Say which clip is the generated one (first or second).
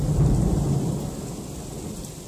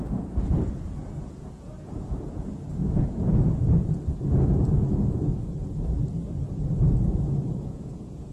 second